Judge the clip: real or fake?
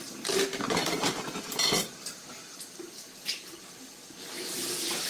real